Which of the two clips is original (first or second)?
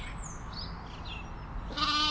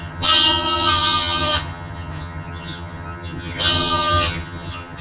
first